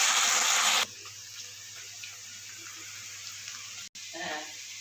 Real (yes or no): yes